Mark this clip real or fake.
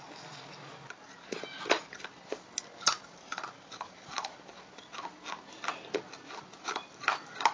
real